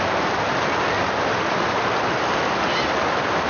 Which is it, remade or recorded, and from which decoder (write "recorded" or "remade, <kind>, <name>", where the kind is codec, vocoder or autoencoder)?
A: recorded